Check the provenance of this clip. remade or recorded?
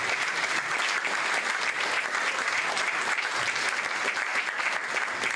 recorded